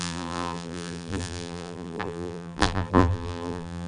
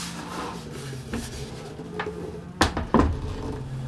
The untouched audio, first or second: second